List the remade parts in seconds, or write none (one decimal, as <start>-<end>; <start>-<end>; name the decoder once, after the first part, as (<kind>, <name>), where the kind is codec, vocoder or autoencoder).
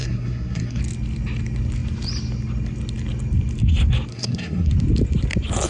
0.0-0.8 (codec, SNAC); 4.1-4.7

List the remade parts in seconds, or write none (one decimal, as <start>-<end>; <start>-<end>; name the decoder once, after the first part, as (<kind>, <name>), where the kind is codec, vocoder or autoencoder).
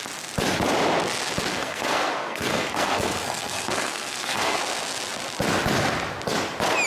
1.5-4.6 (codec, SNAC)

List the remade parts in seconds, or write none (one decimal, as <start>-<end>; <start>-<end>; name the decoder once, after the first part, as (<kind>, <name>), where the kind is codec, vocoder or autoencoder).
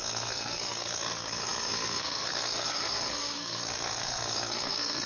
0.0-5.1 (codec, SNAC)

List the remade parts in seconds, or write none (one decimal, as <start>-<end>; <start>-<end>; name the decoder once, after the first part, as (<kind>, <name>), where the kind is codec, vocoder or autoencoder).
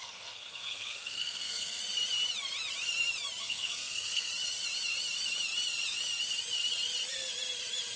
0.0-1.8 (codec, SNAC); 3.4-4.3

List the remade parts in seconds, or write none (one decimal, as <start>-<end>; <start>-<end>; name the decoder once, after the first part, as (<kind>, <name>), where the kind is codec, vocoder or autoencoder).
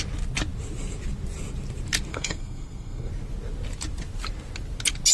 2.1-3.1 (codec, SNAC)